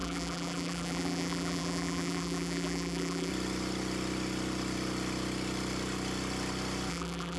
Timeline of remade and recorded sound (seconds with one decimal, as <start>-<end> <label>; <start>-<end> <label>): 0.0-3.3 remade; 3.3-6.9 recorded; 6.9-7.4 remade